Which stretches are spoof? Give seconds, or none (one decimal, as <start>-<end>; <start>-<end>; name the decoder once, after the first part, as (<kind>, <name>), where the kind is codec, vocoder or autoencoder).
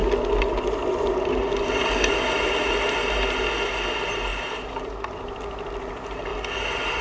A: 4.3-5.1 (vocoder, BigVGAN v2)